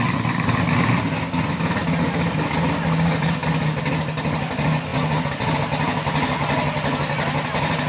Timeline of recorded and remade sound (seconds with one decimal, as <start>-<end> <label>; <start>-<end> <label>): 0.0-7.9 recorded